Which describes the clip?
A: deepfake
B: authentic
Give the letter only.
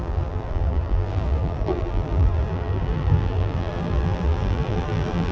A